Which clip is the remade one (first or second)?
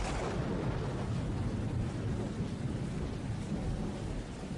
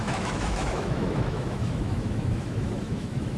second